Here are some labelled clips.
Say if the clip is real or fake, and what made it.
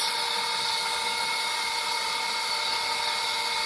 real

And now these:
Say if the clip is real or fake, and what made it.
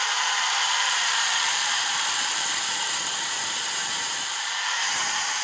fake, vocoder, BigVGAN v2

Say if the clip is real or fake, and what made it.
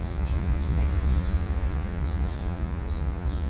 fake, vocoder, Vocos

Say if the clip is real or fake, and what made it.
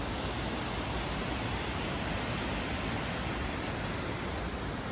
real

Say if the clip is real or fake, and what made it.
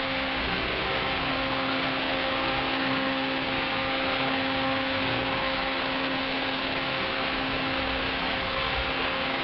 fake, codec, SNAC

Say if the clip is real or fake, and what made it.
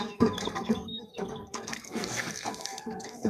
fake, codec, SNAC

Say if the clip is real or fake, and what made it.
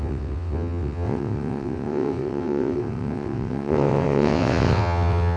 fake, vocoder, WaveNeXt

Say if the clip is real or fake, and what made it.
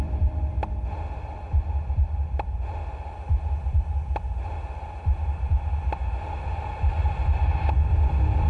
real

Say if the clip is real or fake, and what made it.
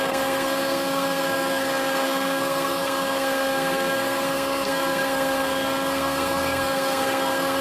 fake, codec, SNAC